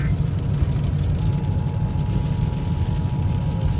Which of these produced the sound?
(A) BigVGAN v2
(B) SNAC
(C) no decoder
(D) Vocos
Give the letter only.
C